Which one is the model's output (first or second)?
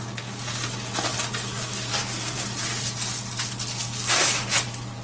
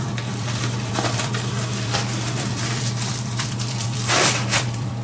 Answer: second